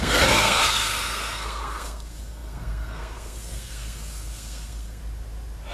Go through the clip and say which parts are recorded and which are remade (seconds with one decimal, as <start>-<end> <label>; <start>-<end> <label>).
0.0-5.0 remade; 5.0-5.7 recorded